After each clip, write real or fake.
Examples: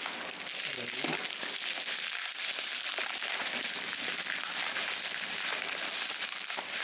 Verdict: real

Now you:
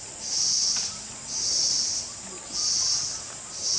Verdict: real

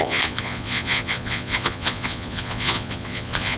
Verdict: fake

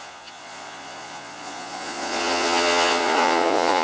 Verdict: fake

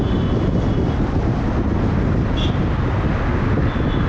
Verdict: real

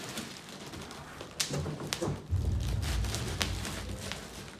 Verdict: real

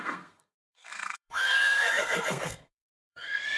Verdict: fake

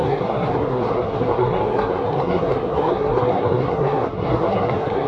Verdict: fake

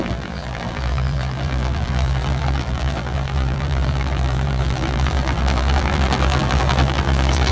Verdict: fake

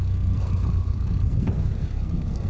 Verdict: fake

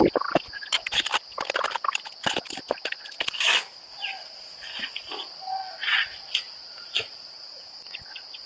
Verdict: real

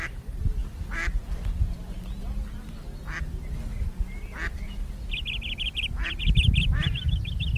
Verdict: real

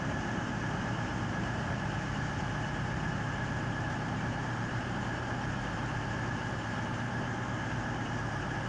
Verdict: fake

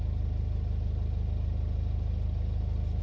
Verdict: real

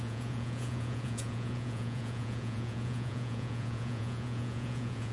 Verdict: fake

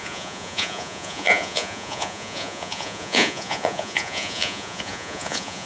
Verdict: fake